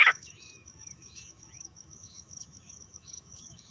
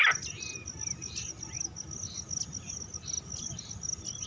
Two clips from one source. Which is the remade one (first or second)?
first